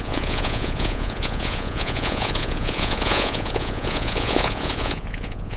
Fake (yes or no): yes